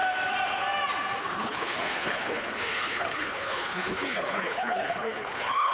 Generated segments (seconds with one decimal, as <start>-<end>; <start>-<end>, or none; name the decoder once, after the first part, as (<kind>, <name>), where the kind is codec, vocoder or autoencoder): 1.2-5.7 (codec, HILCodec)